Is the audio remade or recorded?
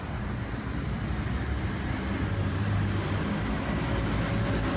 recorded